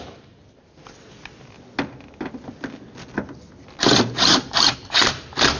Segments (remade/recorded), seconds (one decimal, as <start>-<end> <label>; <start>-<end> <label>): 0.0-0.8 remade; 0.8-4.0 recorded; 4.0-5.6 remade